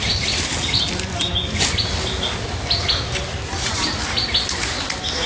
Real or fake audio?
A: real